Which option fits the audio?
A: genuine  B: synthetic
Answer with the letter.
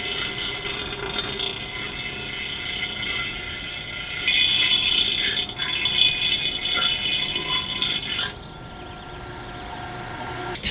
A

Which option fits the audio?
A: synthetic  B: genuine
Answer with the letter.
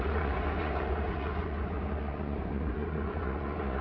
A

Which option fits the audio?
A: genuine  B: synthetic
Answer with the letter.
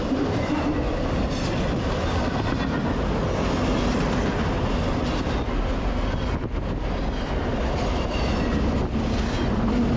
A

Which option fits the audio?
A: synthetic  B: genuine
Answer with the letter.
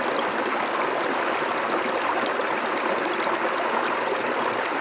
B